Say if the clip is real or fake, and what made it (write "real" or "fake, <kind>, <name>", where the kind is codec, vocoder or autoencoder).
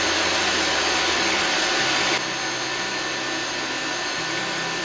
real